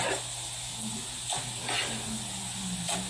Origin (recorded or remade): recorded